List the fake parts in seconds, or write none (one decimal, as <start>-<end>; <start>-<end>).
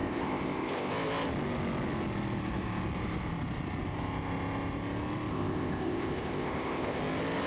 0.0-0.9; 5.3-7.0